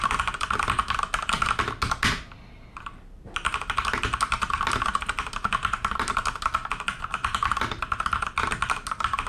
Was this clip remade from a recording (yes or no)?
no